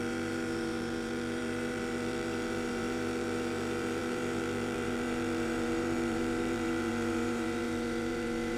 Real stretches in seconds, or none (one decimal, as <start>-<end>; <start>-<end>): none